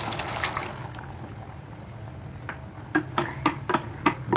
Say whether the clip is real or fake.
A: real